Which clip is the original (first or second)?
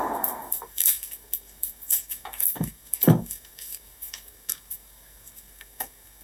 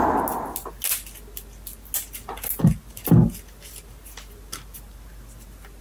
second